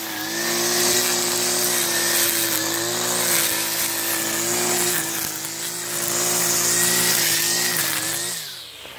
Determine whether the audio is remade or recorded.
recorded